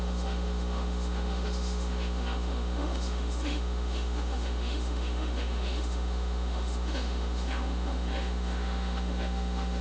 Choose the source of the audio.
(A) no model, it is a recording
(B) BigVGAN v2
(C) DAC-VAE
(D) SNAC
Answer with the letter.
C